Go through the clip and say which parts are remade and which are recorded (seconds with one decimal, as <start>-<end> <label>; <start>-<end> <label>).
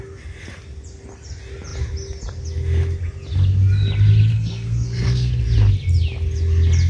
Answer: 0.0-4.3 recorded; 4.3-5.3 remade; 5.3-6.9 recorded